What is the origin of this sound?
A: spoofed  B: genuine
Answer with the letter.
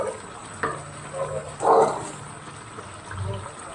B